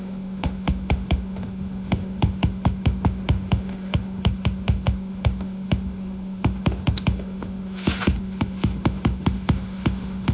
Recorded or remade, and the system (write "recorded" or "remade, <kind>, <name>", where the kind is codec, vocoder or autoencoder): remade, autoencoder, DAC-VAE